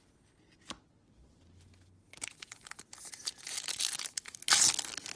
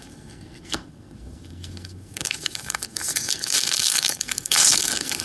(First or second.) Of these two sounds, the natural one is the first